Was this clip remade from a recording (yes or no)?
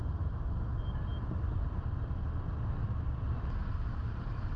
no